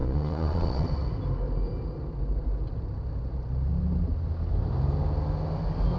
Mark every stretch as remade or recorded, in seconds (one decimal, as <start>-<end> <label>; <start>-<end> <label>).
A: 0.0-0.9 remade; 0.9-6.0 recorded